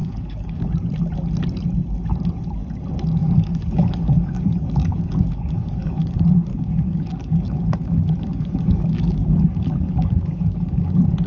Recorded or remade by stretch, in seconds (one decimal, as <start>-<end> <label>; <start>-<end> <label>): 0.0-0.7 remade; 0.7-3.2 recorded; 3.2-6.1 remade; 6.1-6.5 recorded; 6.5-10.9 remade; 10.9-11.3 recorded

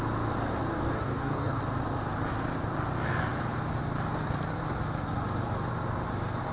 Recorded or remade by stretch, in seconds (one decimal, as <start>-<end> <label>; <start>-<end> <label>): 0.0-0.7 recorded; 0.7-1.6 remade; 1.6-6.5 recorded

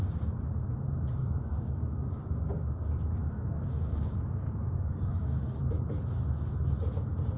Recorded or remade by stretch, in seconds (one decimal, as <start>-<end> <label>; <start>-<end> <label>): 0.0-1.2 recorded; 1.2-5.6 remade; 5.6-7.4 recorded